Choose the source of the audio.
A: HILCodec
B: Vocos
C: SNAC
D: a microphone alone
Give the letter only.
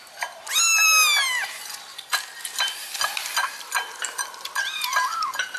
D